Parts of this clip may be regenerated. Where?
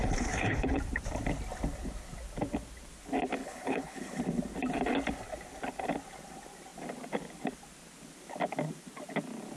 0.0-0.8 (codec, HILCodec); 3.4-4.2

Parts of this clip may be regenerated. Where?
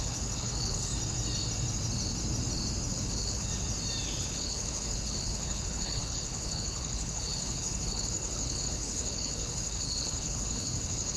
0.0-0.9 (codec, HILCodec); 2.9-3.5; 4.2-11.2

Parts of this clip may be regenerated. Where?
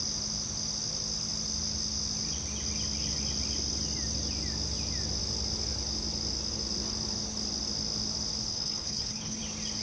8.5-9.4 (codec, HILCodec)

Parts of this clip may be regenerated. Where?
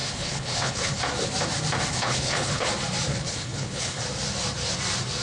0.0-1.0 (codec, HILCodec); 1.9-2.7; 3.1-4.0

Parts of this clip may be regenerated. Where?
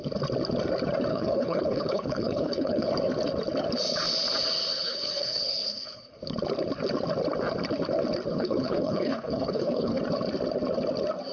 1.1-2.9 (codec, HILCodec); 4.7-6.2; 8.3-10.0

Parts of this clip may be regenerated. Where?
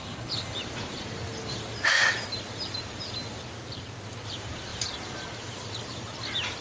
0.0-0.6 (codec, HILCodec)